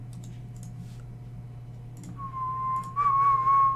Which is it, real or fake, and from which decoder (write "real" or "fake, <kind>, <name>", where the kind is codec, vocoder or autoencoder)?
real